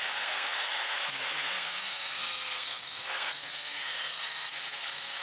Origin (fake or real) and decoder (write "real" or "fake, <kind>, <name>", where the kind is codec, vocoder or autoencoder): fake, codec, SNAC